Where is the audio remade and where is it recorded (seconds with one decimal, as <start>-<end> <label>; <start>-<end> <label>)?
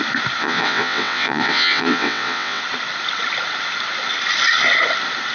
0.0-0.4 recorded; 0.4-2.6 remade; 2.6-5.3 recorded